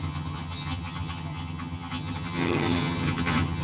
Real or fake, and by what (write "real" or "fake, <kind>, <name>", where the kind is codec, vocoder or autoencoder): fake, vocoder, HiFi-GAN